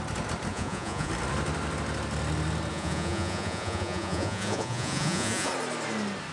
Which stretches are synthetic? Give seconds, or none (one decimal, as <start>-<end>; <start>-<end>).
0.5-1.1; 2.7-5.5